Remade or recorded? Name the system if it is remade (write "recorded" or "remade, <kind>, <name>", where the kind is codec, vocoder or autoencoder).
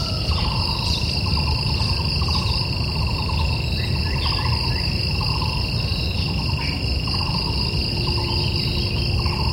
recorded